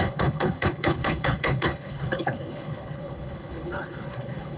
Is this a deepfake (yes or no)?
yes